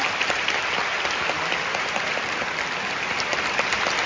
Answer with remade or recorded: recorded